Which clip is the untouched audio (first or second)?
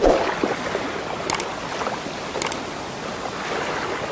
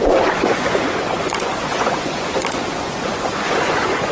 first